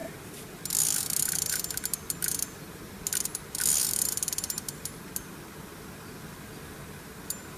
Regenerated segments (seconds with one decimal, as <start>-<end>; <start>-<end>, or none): none